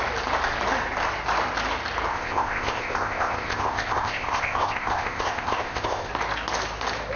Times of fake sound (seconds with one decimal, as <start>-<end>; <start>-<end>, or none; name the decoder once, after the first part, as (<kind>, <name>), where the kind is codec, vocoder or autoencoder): 2.1-6.1 (codec, ZipCodec)